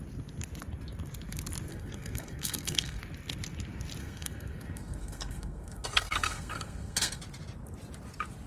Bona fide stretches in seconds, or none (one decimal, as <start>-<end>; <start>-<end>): 0.0-1.7; 3.0-4.0; 7.2-8.5